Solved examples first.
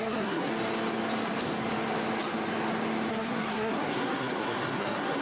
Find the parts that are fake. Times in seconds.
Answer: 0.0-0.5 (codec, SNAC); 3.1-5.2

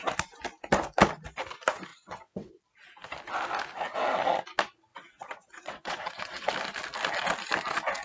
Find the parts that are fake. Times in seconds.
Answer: 1.9-2.6 (vocoder, WaveNeXt); 4.9-6.5

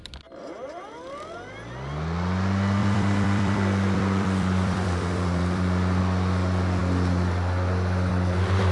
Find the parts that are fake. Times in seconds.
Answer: 2.8-6.0 (vocoder, BigVGAN v2)

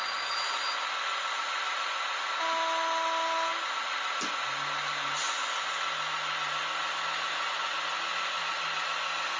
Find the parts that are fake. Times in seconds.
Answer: none

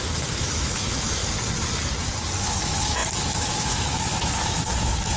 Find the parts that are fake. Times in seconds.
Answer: 0.0-1.2 (autoencoder, DAC-VAE); 2.4-5.2

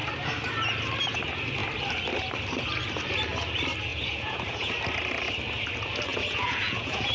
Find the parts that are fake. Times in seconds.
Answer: 3.9-4.7 (vocoder, Vocos); 6.1-7.1

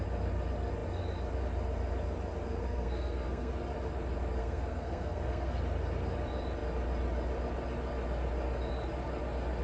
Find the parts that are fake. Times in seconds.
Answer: 2.6-3.5 (codec, SNAC); 4.4-5.5

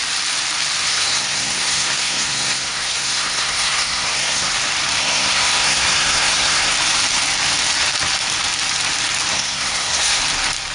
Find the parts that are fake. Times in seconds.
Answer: 0.9-4.5 (codec, SNAC); 5.0-6.7; 9.3-10.2